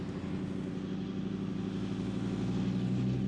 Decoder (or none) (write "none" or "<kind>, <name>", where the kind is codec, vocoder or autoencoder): none